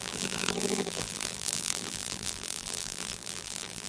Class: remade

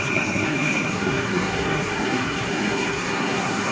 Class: remade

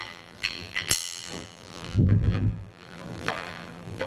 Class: remade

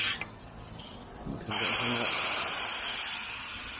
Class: recorded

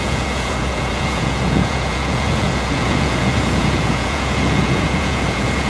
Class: remade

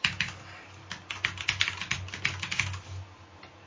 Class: recorded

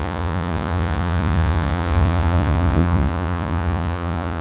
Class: remade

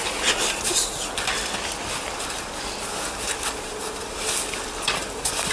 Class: recorded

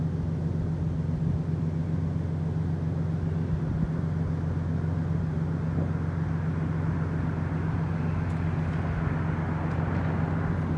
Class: recorded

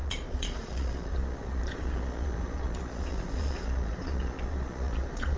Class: remade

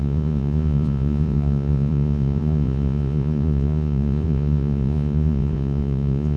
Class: remade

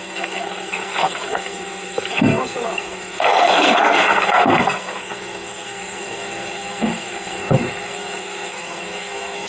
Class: remade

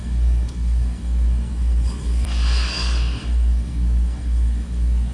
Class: remade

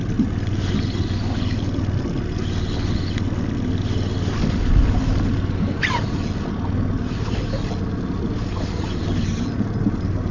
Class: recorded